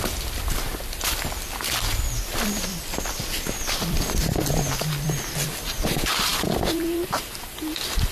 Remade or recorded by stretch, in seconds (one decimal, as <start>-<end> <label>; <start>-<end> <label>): 0.0-8.1 remade